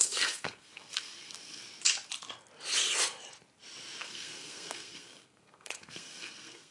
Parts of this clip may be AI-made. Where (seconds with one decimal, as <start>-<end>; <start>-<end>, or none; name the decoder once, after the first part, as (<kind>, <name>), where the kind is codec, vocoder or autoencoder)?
0.0-1.6 (codec, SNAC); 4.0-6.7